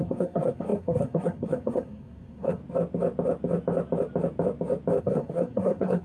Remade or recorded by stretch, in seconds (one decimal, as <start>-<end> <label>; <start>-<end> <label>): 0.0-2.6 remade; 2.6-5.0 recorded; 5.0-6.0 remade